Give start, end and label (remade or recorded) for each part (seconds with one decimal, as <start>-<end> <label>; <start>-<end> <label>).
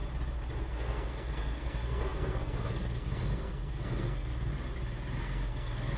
0.0-0.6 recorded; 0.6-4.5 remade; 4.5-5.2 recorded; 5.2-6.0 remade